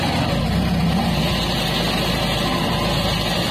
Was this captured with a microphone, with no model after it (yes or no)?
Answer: yes